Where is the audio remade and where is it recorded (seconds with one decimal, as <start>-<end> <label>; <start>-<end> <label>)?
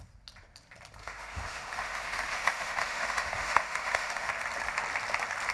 0.0-1.0 recorded; 1.0-4.3 remade; 4.3-5.5 recorded